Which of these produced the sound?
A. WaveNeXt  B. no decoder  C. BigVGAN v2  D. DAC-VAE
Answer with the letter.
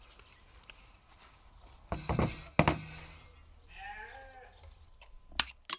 B